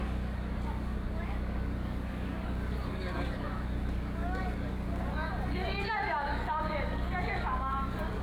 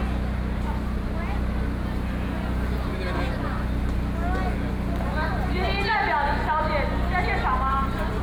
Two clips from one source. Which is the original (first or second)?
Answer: second